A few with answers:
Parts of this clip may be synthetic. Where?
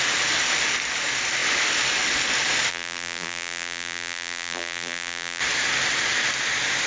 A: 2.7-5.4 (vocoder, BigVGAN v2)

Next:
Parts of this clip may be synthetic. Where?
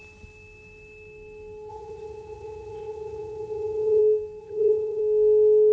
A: 1.7-4.0 (vocoder, HiFi-GAN); 4.4-5.0